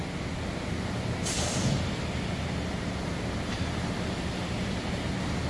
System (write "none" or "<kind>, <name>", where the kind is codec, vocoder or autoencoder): none